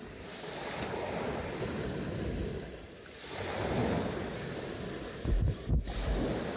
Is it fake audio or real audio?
real